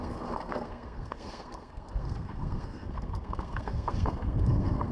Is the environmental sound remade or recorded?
remade